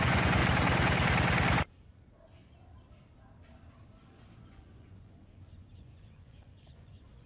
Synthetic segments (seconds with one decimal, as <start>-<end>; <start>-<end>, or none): 0.0-0.4; 4.0-7.3